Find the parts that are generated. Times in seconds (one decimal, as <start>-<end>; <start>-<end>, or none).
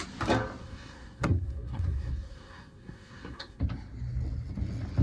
0.6-3.6